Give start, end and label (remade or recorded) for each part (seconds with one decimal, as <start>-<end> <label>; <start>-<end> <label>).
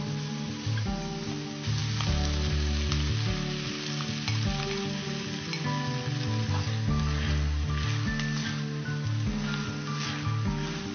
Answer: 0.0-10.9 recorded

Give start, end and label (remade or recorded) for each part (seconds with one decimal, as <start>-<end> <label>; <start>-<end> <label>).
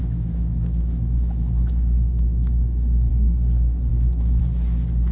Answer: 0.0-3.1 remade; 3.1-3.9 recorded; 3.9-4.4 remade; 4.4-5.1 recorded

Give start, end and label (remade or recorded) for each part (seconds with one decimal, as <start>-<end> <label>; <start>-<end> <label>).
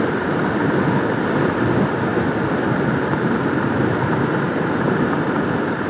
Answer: 0.0-3.1 recorded; 3.1-4.2 remade; 4.2-5.9 recorded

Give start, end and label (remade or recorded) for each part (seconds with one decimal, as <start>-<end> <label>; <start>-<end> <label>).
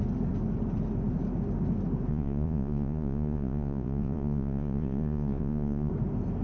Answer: 0.0-2.1 recorded; 2.1-5.9 remade; 5.9-6.4 recorded